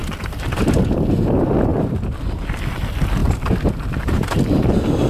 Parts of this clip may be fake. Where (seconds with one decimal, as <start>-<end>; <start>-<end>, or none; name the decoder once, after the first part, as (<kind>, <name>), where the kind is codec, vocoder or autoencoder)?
0.0-0.8 (vocoder, BigVGAN v2); 1.7-2.6; 3.2-4.4